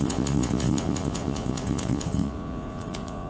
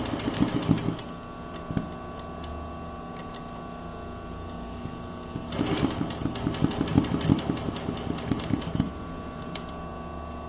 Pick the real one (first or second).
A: second